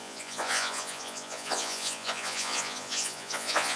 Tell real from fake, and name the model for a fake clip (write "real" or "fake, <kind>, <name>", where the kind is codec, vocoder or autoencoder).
fake, vocoder, Vocos